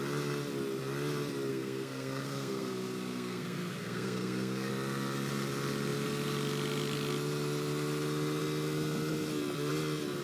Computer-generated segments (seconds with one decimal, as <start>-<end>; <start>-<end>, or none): 1.5-4.7